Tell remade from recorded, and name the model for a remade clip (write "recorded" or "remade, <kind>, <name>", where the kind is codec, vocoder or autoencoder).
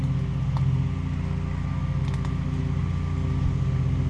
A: recorded